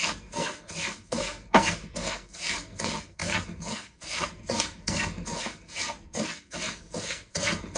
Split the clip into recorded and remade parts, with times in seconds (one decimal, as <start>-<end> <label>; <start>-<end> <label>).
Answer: 0.0-7.8 remade